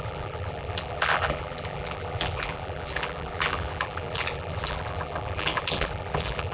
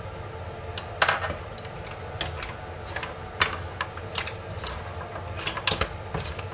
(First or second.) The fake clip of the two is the first